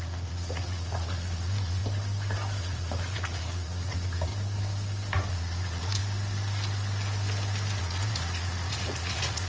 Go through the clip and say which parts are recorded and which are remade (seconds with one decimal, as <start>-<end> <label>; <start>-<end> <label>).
0.0-1.8 remade; 1.8-2.6 recorded; 2.6-4.3 remade; 4.3-5.3 recorded; 5.3-6.0 remade; 6.0-7.8 recorded; 7.8-9.5 remade